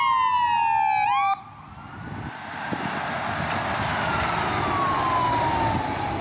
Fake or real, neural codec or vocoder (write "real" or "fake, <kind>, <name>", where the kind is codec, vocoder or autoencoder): real